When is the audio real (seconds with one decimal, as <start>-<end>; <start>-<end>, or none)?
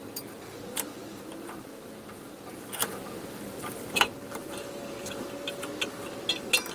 0.0-4.4; 5.0-6.7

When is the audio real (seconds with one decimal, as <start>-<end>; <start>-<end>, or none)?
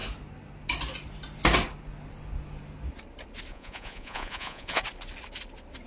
0.0-3.5; 4.8-5.9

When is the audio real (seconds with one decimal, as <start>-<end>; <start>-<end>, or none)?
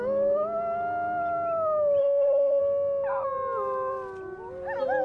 0.0-2.0; 2.6-5.0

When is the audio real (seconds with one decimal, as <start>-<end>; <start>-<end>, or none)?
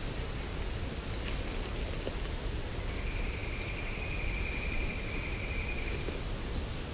0.0-6.9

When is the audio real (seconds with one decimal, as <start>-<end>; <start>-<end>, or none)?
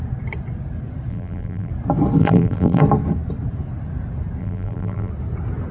0.0-1.1; 1.7-2.2; 2.8-4.4; 5.1-5.7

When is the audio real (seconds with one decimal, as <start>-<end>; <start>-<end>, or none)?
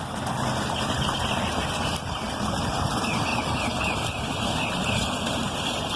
0.0-6.0